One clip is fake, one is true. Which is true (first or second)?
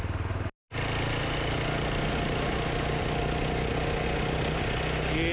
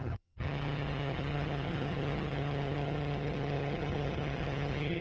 first